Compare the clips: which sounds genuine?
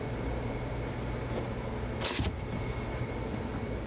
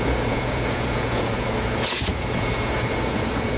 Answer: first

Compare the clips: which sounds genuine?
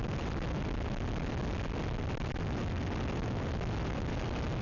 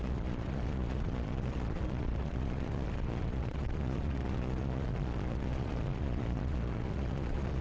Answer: first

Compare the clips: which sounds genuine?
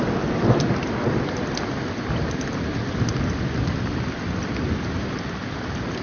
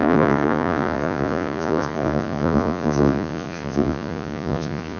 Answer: first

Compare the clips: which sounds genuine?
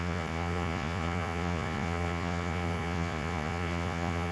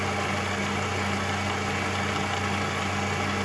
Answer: second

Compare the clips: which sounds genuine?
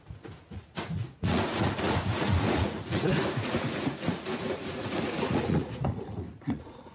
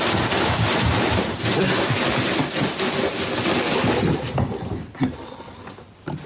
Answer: second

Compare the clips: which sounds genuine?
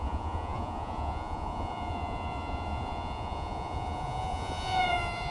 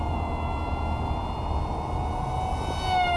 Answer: second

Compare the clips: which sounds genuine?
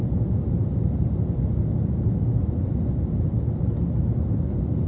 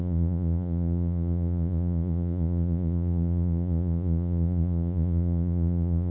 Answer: first